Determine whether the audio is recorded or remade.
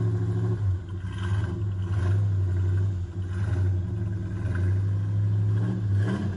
recorded